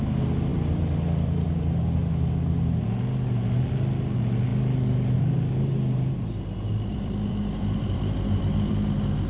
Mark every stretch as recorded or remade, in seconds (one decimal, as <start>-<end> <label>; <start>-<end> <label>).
0.0-0.5 recorded; 0.5-2.1 remade; 2.1-6.9 recorded; 6.9-8.7 remade; 8.7-9.3 recorded